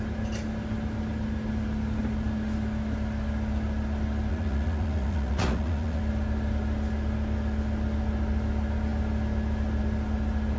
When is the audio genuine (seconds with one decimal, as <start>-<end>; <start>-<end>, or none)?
0.0-4.3; 6.0-10.6